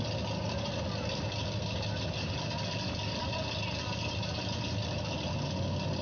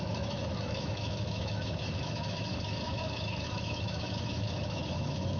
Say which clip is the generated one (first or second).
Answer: second